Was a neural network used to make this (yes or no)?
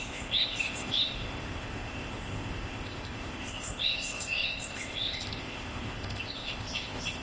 yes